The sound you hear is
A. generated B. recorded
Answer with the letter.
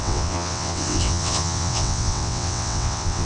A